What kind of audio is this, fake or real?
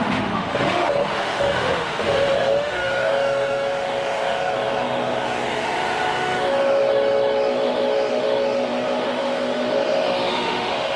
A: fake